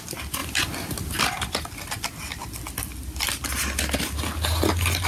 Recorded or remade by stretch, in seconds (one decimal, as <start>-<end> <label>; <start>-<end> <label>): 0.0-5.1 recorded